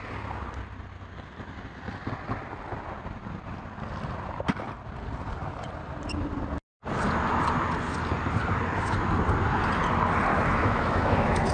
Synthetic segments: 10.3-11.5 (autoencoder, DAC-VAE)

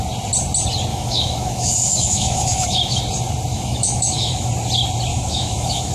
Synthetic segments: 0.9-3.0 (autoencoder, DAC-VAE); 3.5-4.5; 5.1-5.9

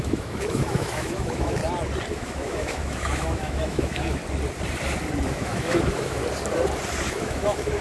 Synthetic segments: 0.0-1.6 (autoencoder, DAC-VAE); 2.1-4.2; 5.3-6.2; 7.1-7.8

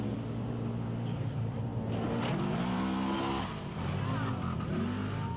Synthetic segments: none